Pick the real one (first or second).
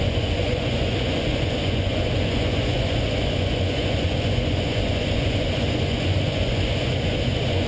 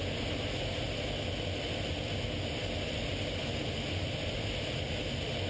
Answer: second